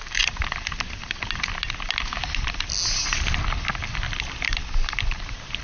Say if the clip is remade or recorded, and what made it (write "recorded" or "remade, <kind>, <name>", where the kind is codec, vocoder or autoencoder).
recorded